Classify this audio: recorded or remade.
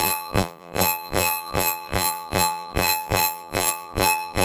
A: remade